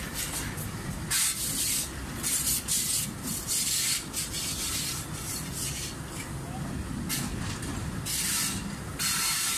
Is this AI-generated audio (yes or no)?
no